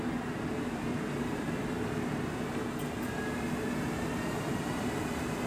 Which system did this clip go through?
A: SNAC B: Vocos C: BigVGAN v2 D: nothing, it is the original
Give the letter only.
D